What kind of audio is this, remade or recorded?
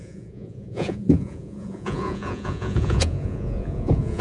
remade